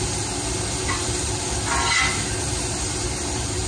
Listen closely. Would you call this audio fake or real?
real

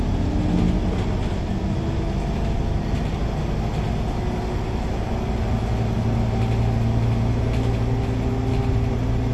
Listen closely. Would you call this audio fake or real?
real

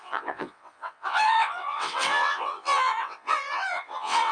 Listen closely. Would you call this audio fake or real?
fake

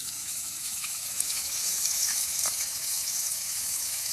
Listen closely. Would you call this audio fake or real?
fake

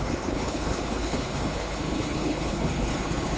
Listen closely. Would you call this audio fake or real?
fake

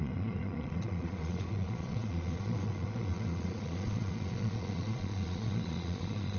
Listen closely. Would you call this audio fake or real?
fake